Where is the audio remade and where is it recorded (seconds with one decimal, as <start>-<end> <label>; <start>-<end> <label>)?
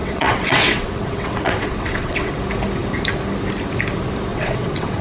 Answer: 0.0-2.3 remade; 2.3-4.3 recorded; 4.3-5.0 remade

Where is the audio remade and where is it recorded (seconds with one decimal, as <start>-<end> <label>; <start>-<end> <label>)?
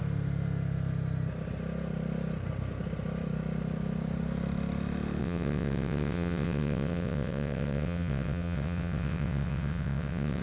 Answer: 0.0-5.2 recorded; 5.2-10.4 remade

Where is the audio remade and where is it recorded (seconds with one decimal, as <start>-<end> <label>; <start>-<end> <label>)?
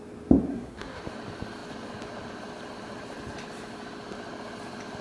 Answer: 0.0-0.5 recorded; 0.5-1.0 remade; 1.0-5.0 recorded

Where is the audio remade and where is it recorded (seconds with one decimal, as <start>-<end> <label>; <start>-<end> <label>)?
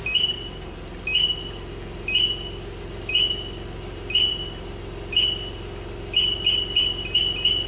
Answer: 0.0-7.7 recorded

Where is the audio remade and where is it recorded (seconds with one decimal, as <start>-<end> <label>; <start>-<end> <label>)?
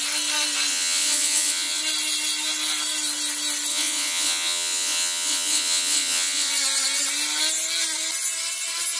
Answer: 0.0-0.7 recorded; 0.7-1.8 remade; 1.8-3.7 recorded; 3.7-6.5 remade; 6.5-9.0 recorded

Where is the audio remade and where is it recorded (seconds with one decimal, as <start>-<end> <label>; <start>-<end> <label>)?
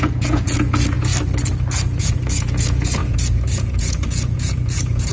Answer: 0.0-1.1 remade; 1.1-2.0 recorded; 2.0-5.1 remade